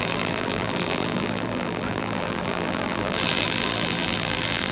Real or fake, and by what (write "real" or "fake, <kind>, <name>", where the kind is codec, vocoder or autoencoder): fake, vocoder, BigVGAN v2